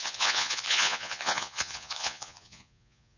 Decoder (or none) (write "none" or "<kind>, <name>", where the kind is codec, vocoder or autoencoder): vocoder, Vocos